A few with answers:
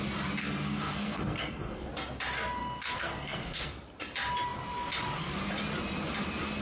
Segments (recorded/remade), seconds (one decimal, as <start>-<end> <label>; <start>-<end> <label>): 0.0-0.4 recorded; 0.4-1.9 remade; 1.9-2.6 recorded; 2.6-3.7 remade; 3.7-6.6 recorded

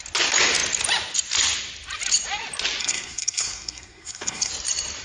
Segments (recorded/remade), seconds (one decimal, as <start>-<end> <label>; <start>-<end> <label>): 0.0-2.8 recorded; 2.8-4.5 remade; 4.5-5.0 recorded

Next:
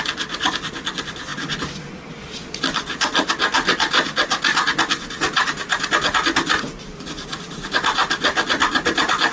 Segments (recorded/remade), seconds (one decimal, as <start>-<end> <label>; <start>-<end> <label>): 0.0-9.3 recorded